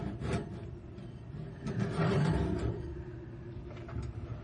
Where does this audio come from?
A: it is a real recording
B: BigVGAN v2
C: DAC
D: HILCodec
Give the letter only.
B